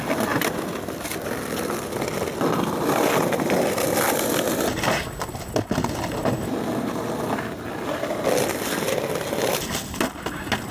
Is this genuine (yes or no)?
yes